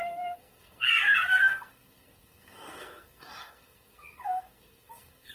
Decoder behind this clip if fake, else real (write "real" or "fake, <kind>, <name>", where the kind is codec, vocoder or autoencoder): fake, codec, SNAC